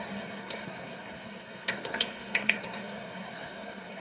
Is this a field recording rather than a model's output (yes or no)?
no